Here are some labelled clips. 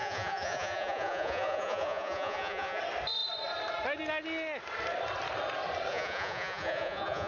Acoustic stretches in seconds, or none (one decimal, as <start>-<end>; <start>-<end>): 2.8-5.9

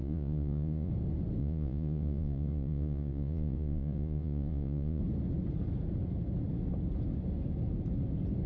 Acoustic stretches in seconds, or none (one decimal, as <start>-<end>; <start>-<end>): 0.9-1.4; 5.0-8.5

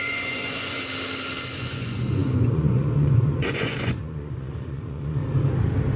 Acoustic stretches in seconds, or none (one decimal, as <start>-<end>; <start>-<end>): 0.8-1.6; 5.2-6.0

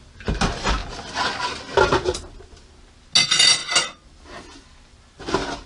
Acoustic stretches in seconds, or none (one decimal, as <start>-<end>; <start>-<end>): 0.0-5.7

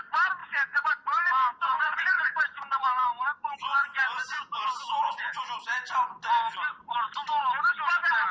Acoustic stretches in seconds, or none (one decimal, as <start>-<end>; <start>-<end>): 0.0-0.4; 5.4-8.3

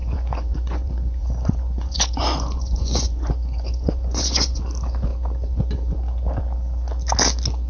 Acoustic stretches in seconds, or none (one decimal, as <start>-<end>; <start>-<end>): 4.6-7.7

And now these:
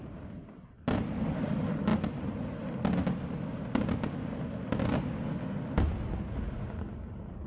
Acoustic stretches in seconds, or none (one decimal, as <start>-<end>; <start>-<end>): 0.0-7.5